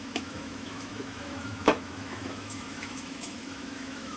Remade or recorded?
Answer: remade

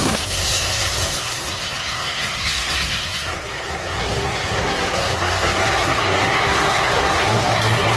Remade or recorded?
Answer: remade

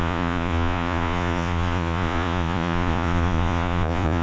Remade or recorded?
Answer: remade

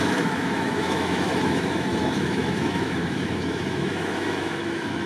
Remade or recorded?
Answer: remade